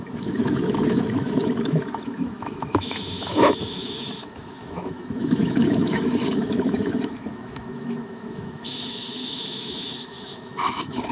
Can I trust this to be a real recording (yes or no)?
no